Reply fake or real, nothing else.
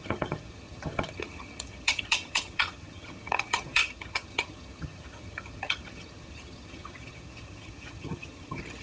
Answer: fake